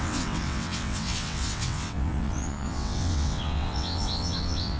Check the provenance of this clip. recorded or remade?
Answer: remade